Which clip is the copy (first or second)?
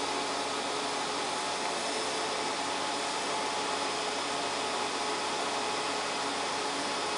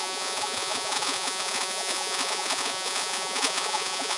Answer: second